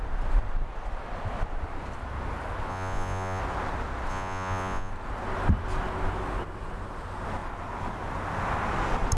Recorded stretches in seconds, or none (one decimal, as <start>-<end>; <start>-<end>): 0.0-2.7; 3.4-4.1; 4.9-9.2